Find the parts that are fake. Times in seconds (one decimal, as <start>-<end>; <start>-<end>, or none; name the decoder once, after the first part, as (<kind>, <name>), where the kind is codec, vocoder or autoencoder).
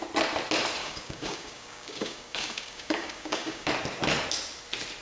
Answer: 0.8-3.7 (codec, DAC)